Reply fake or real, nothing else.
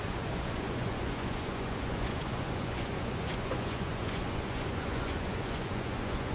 fake